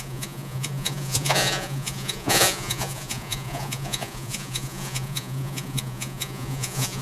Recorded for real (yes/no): no